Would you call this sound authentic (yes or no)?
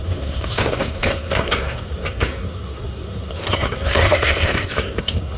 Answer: no